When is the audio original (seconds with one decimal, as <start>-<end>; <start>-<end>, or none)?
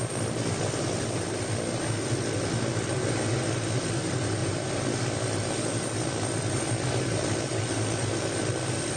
0.0-9.0